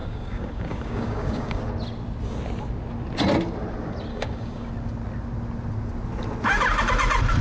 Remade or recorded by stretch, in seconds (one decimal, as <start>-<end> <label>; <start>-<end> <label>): 0.0-1.6 remade; 1.6-4.1 recorded; 4.1-4.7 remade; 4.7-7.4 recorded